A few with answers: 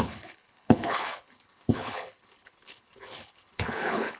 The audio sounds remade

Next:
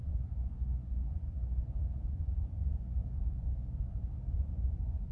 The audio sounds remade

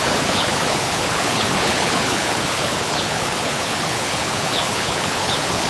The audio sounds remade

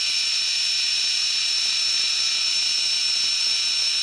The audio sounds recorded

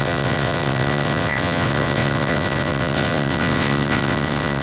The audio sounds remade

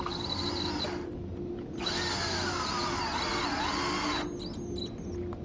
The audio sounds recorded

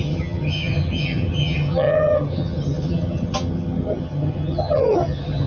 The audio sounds remade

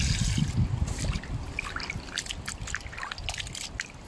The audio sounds recorded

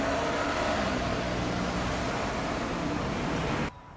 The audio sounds recorded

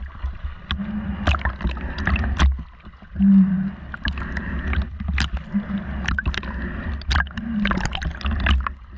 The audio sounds recorded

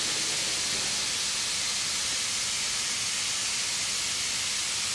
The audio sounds recorded